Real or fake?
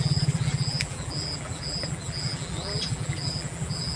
fake